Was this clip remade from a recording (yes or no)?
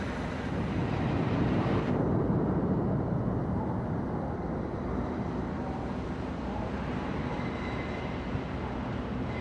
yes